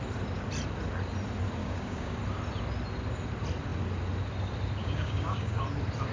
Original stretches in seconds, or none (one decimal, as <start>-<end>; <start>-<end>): 0.0-1.6; 2.2-4.8; 5.6-6.1

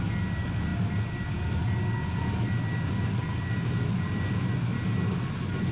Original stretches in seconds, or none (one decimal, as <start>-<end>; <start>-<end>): 0.0-5.7

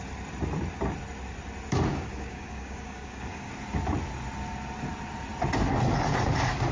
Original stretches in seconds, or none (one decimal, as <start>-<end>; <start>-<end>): 0.0-1.9; 3.5-6.7

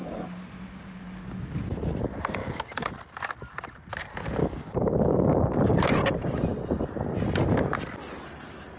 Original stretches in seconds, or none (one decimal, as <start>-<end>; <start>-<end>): 0.0-2.4; 2.9-4.4; 5.4-8.8